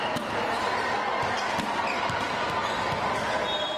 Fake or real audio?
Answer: real